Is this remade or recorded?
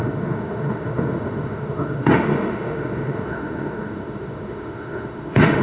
remade